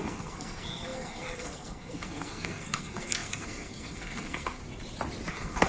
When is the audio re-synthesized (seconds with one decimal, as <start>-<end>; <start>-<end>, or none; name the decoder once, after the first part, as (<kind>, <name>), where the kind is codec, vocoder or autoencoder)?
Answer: 0.0-4.6 (codec, SNAC); 5.3-5.7